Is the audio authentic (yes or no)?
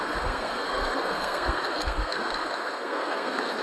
no